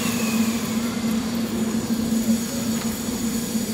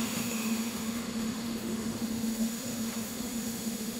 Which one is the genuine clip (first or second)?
first